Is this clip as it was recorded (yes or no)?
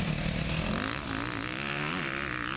yes